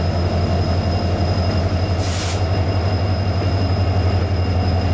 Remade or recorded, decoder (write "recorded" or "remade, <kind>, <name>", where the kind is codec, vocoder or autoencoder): recorded